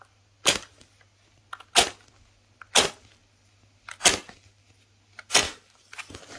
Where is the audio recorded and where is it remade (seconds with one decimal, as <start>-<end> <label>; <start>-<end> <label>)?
0.0-6.4 recorded